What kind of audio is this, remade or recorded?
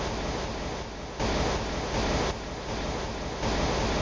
recorded